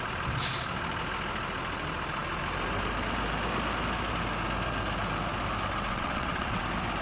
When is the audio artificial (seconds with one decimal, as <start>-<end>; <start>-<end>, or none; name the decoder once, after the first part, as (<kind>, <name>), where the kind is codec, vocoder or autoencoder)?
5.9-6.6 (vocoder, WaveNeXt)